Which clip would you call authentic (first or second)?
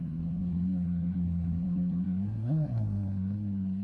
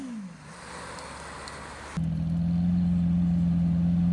second